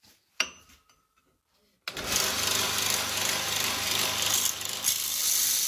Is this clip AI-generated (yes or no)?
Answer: no